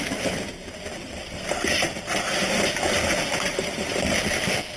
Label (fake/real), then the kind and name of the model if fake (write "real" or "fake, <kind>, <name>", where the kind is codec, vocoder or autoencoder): real